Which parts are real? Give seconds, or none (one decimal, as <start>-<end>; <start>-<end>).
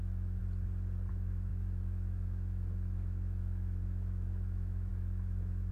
0.4-1.1